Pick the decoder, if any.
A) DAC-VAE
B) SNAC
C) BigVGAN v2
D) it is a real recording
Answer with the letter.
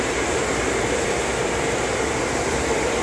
C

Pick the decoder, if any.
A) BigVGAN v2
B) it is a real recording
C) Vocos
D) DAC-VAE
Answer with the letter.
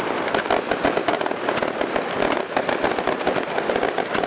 B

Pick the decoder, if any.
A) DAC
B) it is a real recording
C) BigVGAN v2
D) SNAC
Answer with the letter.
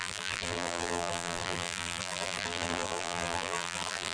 C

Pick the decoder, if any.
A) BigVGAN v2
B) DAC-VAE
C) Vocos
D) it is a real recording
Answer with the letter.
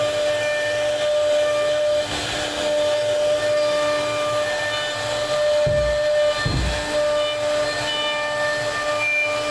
D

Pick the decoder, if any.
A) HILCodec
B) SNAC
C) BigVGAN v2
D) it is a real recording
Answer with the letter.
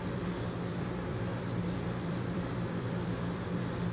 C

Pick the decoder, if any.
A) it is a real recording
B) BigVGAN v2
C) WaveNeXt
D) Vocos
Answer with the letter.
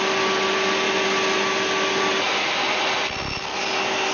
A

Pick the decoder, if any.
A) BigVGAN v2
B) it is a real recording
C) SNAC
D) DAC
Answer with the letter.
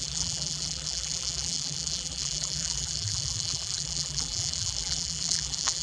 A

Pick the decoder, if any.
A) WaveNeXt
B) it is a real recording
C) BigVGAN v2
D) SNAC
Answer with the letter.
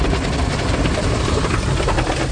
C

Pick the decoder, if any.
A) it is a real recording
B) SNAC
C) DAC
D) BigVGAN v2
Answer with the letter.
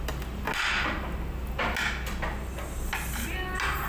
A